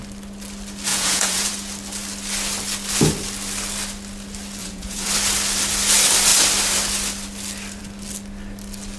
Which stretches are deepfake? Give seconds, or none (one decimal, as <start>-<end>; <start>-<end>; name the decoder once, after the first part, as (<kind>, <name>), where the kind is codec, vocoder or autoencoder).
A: 0.9-1.5 (vocoder, Vocos); 4.6-5.1